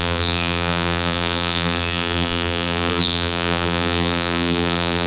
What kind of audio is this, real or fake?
fake